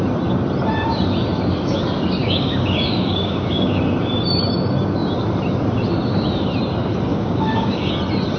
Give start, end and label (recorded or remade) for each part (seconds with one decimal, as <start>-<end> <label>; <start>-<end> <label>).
0.0-2.2 recorded; 2.2-3.8 remade; 3.8-7.1 recorded; 7.1-7.9 remade; 7.9-8.4 recorded